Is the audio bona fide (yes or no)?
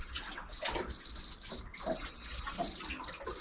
yes